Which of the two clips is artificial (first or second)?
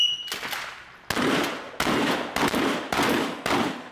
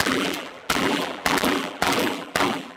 second